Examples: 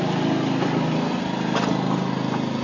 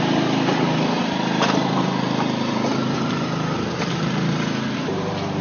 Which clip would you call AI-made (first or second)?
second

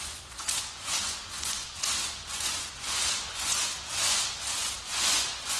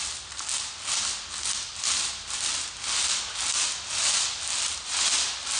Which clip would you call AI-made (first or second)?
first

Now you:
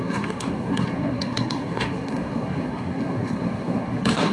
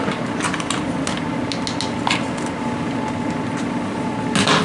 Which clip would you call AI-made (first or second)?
first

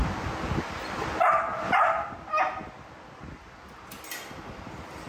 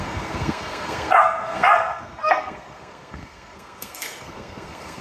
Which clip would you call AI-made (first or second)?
second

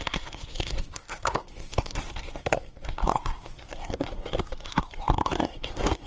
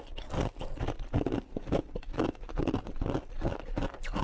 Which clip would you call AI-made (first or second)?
first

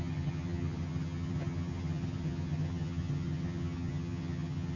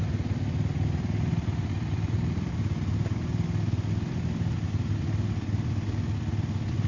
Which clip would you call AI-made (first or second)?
first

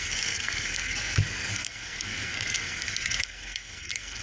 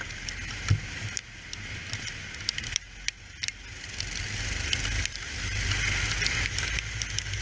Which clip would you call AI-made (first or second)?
first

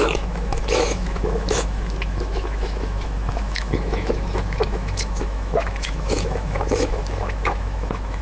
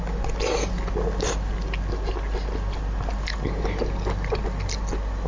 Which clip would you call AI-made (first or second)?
first